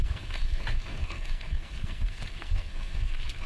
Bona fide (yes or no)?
no